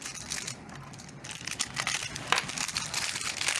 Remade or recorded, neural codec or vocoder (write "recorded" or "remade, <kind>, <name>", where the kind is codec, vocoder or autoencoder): recorded